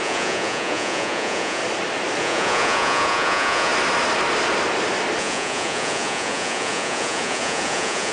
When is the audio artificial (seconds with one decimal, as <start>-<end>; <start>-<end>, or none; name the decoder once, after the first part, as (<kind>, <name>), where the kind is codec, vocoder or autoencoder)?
0.0-1.6 (vocoder, Vocos); 2.2-3.7; 5.2-8.1